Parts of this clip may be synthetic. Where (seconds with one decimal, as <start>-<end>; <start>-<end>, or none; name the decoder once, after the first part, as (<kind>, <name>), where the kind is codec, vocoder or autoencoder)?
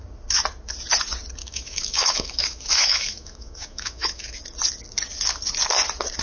1.4-4.4 (autoencoder, DAC-VAE)